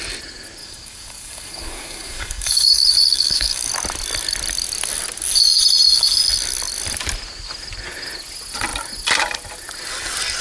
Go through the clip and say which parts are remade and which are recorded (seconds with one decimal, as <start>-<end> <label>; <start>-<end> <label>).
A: 0.0-0.6 recorded; 0.6-3.7 remade; 3.7-10.4 recorded